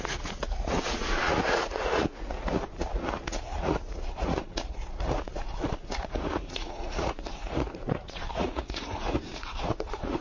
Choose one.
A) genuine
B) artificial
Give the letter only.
B